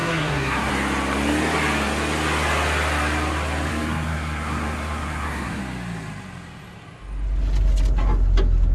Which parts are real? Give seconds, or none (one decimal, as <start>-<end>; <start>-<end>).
0.7-3.7; 5.6-8.7